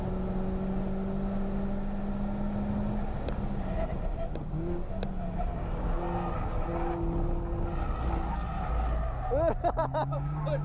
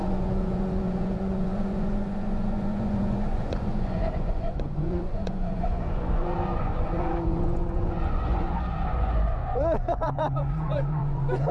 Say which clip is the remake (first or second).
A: second